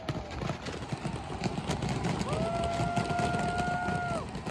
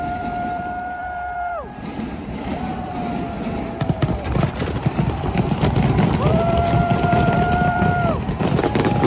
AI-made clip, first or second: second